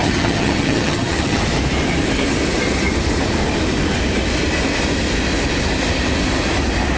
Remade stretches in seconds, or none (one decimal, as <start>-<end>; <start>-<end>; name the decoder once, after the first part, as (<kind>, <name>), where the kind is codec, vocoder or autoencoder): 0.0-1.4 (vocoder, HiFi-GAN)